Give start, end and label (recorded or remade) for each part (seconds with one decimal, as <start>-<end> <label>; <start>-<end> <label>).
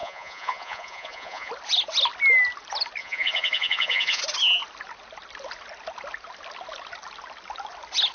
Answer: 0.0-1.5 remade; 1.5-3.0 recorded; 3.0-4.2 remade; 4.2-8.1 recorded